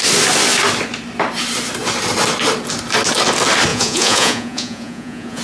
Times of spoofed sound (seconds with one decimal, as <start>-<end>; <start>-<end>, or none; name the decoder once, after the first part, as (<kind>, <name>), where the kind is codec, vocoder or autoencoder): 3.7-5.4 (vocoder, Vocos)

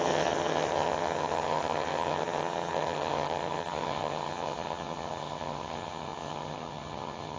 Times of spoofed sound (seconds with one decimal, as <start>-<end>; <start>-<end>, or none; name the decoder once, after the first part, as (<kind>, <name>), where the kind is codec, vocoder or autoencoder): 0.0-7.4 (vocoder, HiFi-GAN)

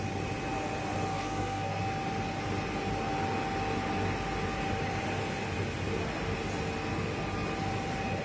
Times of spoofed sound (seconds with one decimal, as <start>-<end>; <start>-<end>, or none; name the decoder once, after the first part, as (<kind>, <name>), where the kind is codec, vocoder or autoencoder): 1.1-1.8 (codec, SNAC)

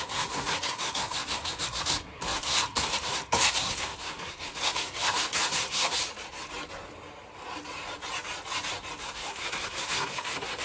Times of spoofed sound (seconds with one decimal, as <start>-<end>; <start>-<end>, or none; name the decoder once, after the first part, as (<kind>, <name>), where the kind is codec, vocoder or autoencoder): 0.0-6.0 (codec, SNAC); 9.0-10.6